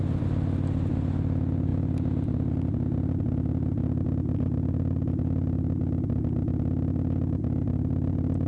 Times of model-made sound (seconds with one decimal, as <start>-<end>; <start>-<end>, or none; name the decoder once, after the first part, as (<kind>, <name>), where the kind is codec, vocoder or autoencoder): none